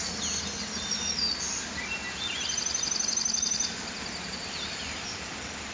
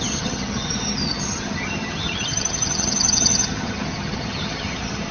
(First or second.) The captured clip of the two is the first